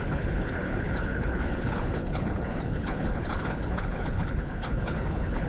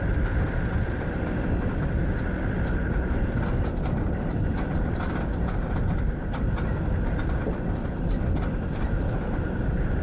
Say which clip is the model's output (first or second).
first